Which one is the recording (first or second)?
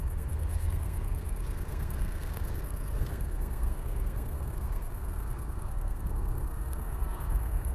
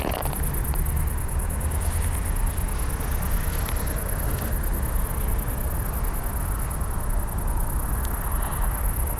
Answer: second